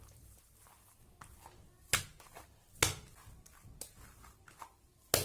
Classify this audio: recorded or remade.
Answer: recorded